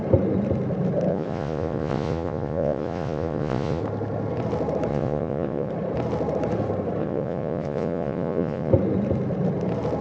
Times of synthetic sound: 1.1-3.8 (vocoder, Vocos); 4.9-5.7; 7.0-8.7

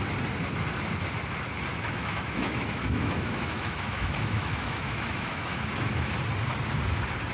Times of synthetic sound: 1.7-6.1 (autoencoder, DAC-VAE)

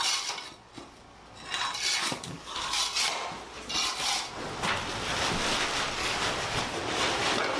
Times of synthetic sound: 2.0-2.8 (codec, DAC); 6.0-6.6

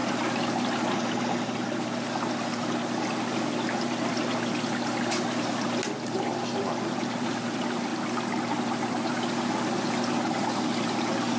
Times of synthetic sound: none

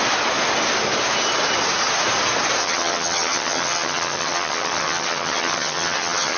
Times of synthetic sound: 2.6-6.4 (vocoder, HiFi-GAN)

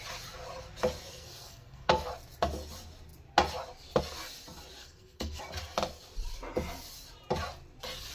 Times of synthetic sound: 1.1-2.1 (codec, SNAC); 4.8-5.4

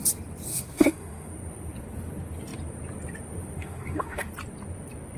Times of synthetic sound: 0.5-1.3 (autoencoder, DAC-VAE); 3.6-4.3

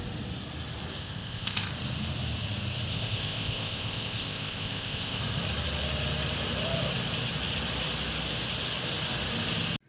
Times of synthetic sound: 1.0-1.7 (codec, ZipCodec); 2.9-5.2